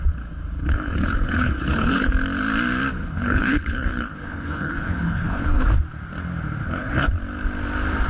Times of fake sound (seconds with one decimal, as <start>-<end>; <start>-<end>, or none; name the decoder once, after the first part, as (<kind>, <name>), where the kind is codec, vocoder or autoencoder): 0.6-2.1 (codec, HILCodec); 3.0-5.8; 6.6-7.1